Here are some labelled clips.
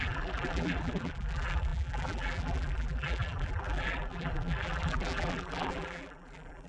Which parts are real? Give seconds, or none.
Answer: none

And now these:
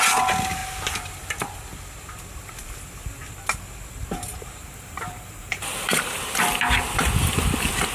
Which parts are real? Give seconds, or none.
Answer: 0.0-4.3; 6.2-7.9

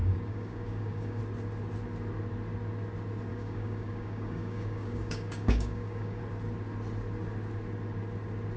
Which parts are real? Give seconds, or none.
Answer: 1.2-3.3; 6.2-8.6

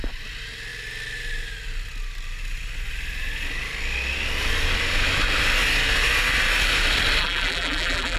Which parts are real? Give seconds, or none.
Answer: 0.0-7.2

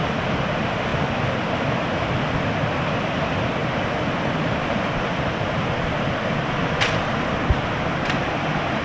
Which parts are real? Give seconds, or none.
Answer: 0.0-8.8

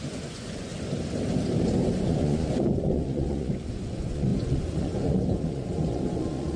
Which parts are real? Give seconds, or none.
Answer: 0.7-2.0

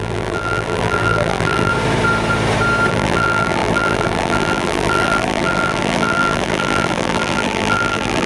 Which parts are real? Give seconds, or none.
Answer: 1.7-2.9